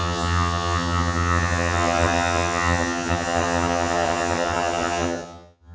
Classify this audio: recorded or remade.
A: remade